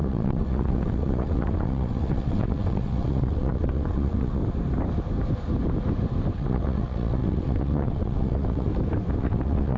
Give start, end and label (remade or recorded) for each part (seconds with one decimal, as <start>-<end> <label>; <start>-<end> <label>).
0.0-4.4 remade; 4.4-6.3 recorded; 6.3-8.7 remade; 8.7-9.2 recorded; 9.2-9.8 remade